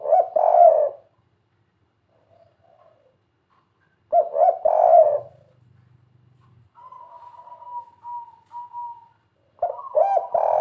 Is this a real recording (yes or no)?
yes